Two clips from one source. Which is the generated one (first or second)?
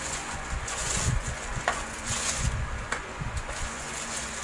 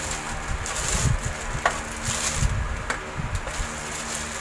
first